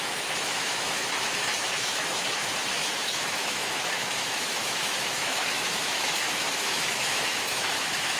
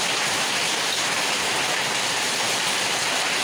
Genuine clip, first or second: second